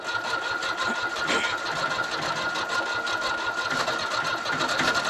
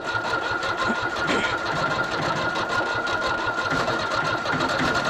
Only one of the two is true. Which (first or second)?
first